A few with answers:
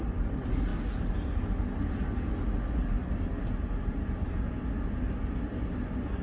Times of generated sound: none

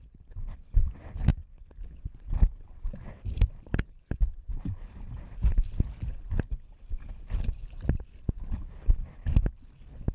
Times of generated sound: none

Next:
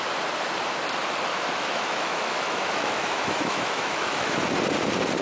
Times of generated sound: 1.3-4.4 (autoencoder, DAC-VAE)